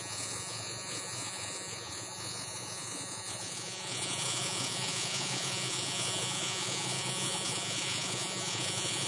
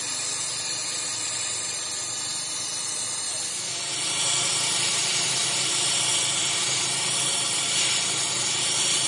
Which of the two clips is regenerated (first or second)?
first